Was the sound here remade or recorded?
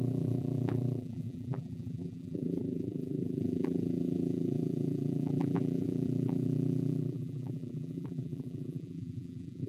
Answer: remade